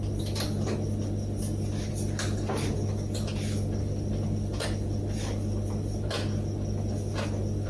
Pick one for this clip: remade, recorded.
recorded